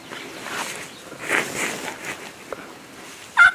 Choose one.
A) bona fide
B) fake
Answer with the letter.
A